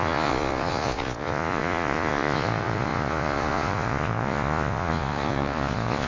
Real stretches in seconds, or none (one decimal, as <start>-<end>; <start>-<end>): none